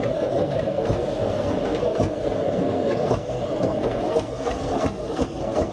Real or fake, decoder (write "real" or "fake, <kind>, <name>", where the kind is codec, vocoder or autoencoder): fake, codec, SNAC